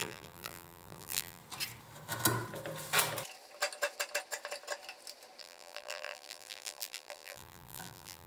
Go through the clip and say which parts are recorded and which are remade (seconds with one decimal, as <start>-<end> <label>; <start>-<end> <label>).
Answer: 0.0-1.4 remade; 1.4-5.4 recorded; 5.4-8.3 remade